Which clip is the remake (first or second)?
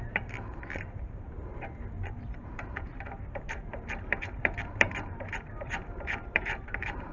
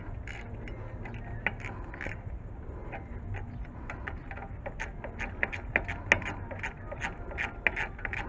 first